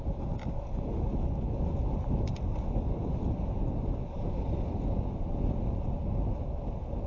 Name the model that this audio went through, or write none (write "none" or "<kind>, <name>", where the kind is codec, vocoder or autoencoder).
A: none